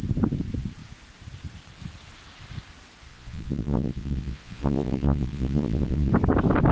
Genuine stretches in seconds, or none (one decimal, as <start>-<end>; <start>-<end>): 0.0-3.1; 6.1-6.7